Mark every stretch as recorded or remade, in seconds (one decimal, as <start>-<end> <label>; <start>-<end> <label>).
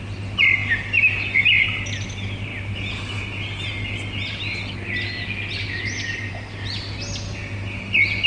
0.0-8.3 recorded